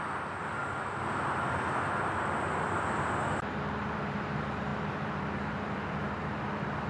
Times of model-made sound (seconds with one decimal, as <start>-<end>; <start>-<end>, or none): none